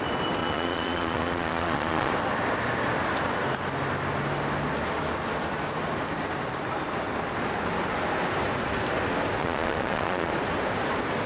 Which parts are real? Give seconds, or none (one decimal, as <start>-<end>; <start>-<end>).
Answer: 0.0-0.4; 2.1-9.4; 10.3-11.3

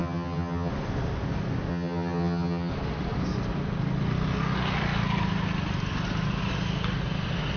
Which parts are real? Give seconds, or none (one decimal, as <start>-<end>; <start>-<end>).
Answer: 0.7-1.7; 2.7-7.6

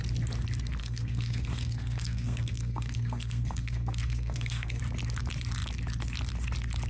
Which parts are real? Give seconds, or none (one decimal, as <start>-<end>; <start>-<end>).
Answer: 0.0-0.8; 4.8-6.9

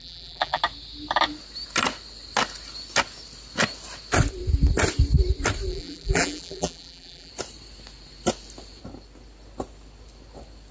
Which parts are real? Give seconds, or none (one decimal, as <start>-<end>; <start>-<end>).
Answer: 0.6-5.7; 7.3-10.7